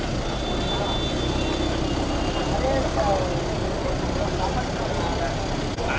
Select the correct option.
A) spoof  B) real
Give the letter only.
B